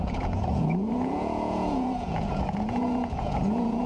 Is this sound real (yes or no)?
no